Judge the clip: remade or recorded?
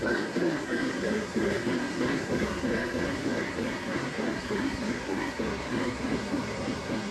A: remade